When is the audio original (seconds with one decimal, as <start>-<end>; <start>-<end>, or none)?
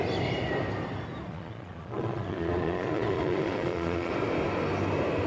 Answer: 0.0-1.3; 4.1-5.3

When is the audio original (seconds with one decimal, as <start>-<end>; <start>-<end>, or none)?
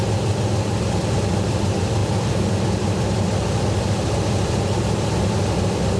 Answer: 0.0-6.0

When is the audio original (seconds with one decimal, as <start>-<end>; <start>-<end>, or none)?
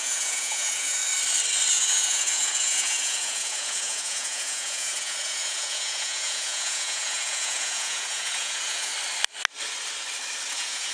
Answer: 1.0-1.7; 8.9-10.5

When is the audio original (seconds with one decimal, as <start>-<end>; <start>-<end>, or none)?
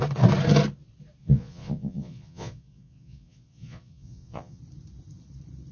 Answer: 0.0-1.2; 4.6-5.7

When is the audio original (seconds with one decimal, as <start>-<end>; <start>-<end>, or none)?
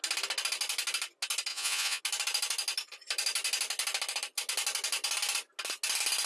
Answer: 0.0-1.5; 2.0-6.3